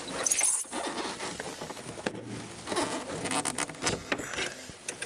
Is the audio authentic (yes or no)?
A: yes